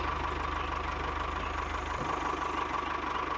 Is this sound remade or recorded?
recorded